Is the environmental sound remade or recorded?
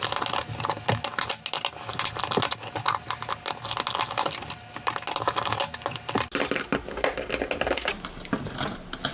recorded